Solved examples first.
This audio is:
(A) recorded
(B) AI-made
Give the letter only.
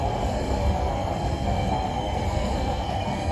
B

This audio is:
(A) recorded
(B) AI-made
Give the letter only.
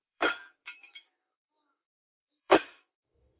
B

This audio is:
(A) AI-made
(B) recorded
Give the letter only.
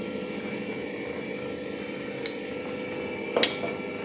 B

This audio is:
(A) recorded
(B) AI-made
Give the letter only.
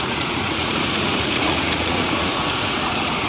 B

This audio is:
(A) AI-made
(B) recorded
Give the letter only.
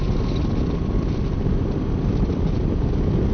B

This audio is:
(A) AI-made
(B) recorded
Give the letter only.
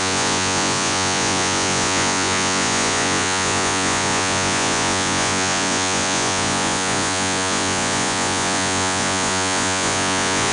A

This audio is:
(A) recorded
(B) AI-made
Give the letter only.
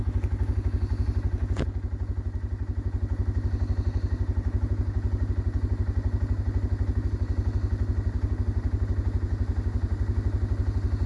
A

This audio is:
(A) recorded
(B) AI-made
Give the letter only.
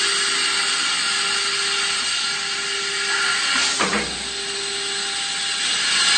A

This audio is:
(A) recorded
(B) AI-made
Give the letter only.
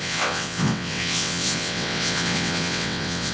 B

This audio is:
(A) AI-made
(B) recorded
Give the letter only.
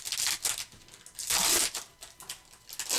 B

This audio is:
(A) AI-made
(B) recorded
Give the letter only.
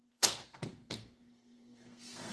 A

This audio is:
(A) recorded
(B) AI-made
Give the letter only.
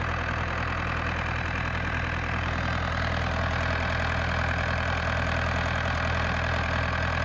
A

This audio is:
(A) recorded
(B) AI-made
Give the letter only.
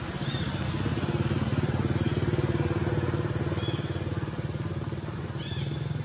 A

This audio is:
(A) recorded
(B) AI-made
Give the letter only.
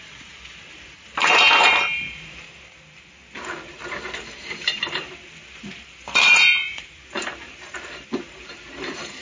B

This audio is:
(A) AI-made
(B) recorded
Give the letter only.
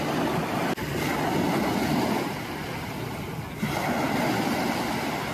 B